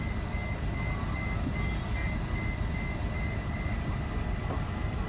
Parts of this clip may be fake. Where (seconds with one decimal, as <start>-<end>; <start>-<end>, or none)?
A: none

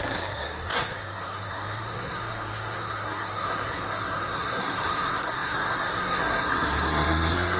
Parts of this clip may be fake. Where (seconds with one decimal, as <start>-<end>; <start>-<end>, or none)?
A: 0.0-7.6

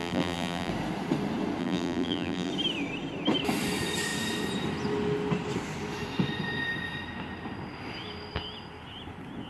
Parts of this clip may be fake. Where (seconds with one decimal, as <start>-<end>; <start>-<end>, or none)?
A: 0.0-0.7; 1.6-2.5